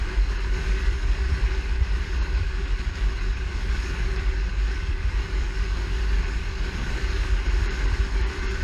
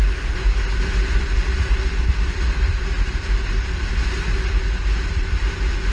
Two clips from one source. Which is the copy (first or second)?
first